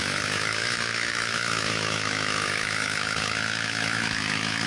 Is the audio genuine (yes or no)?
no